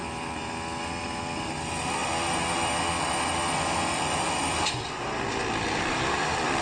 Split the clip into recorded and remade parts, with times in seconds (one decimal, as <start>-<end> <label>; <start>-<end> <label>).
0.0-6.6 recorded

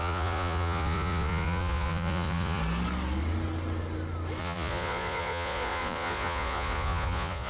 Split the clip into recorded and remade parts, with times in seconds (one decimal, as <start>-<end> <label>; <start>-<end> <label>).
0.0-2.6 remade; 2.6-4.4 recorded; 4.4-7.5 remade